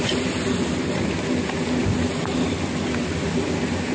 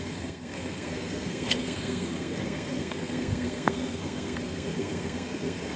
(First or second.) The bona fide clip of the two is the first